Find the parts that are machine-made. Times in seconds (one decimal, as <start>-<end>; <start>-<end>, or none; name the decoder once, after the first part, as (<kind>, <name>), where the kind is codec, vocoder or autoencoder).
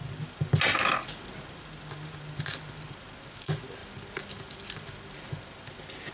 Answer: none